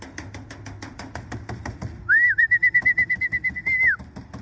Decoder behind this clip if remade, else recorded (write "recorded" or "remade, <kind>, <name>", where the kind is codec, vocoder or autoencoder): recorded